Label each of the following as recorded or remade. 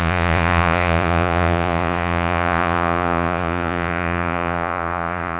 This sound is remade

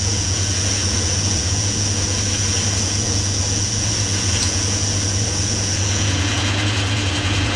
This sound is remade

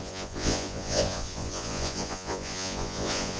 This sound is remade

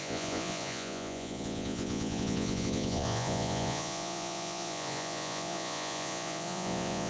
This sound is remade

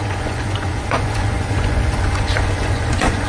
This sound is remade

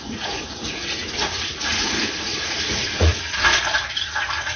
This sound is remade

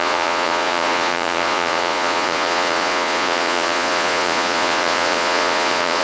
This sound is remade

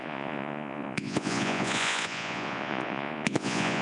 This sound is remade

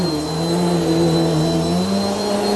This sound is recorded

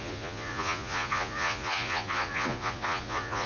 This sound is remade